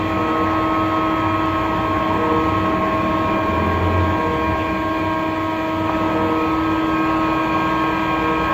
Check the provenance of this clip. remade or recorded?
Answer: recorded